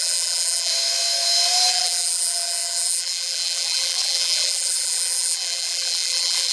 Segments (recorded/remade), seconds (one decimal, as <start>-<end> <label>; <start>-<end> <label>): 0.0-0.7 remade; 0.7-1.7 recorded; 1.7-6.5 remade